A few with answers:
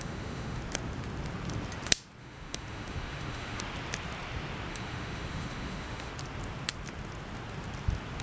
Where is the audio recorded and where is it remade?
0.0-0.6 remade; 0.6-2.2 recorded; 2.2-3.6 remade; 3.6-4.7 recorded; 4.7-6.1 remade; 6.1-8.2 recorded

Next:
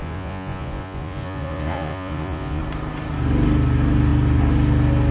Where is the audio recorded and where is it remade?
0.0-2.6 remade; 2.6-5.1 recorded

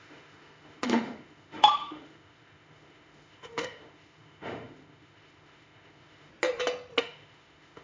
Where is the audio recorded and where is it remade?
0.0-6.3 remade; 6.3-7.0 recorded; 7.0-7.8 remade